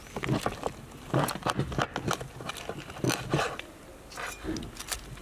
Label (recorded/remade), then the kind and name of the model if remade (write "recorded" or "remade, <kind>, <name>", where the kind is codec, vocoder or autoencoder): recorded